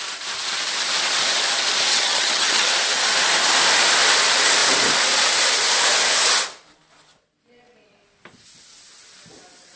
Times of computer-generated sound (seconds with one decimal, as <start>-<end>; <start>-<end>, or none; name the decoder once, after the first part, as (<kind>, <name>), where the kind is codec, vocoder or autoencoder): 1.9-2.7 (vocoder, HiFi-GAN)